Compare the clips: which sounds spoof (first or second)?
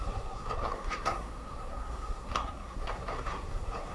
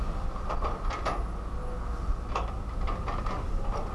first